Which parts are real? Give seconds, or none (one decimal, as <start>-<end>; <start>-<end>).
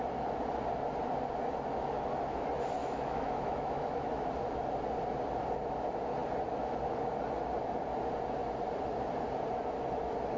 0.0-2.8; 4.3-10.4